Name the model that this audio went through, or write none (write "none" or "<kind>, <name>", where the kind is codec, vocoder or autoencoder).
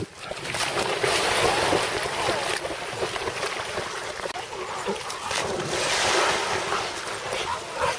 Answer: none